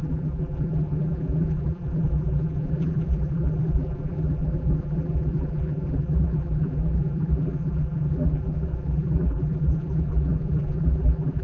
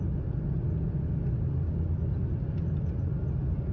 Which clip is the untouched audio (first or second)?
second